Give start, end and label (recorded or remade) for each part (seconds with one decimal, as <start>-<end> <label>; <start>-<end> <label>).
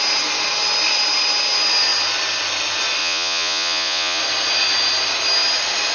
0.0-3.0 recorded; 3.0-4.2 remade; 4.2-5.9 recorded